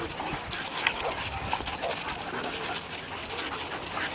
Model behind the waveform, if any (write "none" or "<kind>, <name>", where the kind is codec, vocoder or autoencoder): none